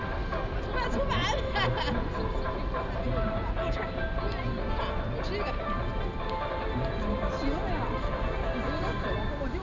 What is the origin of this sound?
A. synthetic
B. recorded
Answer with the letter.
B